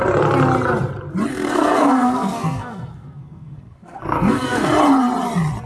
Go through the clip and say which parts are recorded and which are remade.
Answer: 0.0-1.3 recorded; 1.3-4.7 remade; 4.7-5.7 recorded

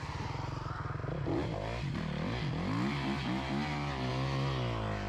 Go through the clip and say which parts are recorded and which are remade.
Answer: 0.0-5.1 recorded

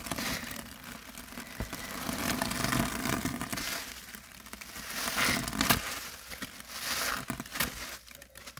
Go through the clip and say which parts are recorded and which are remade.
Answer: 0.0-8.6 recorded

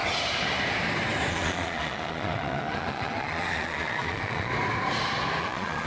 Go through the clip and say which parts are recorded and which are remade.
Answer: 0.0-1.3 recorded; 1.3-4.5 remade; 4.5-5.4 recorded; 5.4-5.9 remade

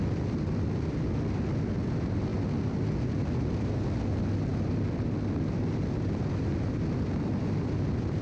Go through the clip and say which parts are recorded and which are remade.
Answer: 0.0-8.2 recorded

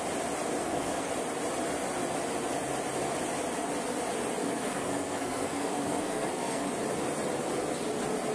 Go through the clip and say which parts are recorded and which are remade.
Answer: 0.0-0.6 recorded; 0.6-1.1 remade; 1.1-4.4 recorded; 4.4-6.7 remade; 6.7-8.3 recorded

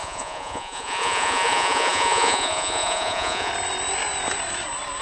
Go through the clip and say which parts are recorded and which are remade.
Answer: 0.0-3.5 remade; 3.5-5.0 recorded